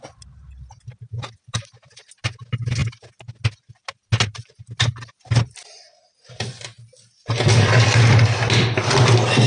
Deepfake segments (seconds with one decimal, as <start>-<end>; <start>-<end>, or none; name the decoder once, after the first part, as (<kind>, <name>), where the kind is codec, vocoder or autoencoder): none